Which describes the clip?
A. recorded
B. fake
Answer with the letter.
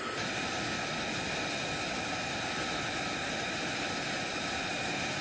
A